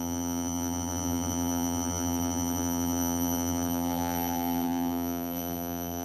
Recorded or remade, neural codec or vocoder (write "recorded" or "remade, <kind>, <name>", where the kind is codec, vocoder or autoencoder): remade, vocoder, BigVGAN v2